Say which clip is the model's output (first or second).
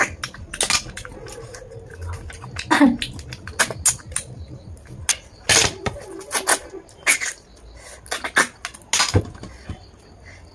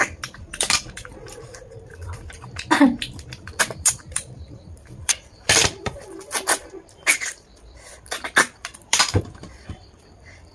second